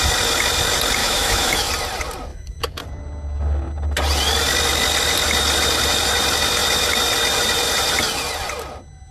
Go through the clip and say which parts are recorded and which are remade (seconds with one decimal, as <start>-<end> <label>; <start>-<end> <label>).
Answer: 0.0-1.0 recorded; 1.0-1.7 remade; 1.7-2.3 recorded; 2.3-2.8 remade; 2.8-9.1 recorded